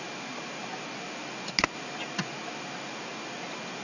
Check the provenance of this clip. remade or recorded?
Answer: recorded